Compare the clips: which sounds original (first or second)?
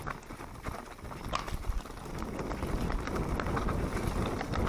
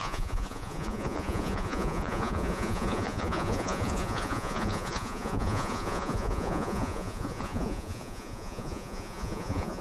first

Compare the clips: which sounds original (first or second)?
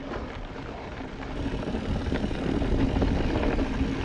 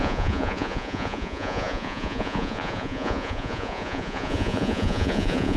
first